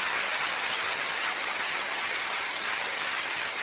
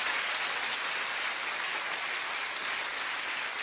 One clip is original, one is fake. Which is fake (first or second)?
first